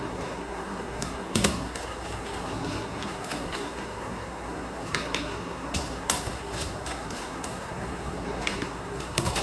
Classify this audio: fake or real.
fake